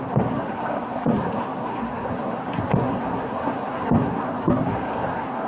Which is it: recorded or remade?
remade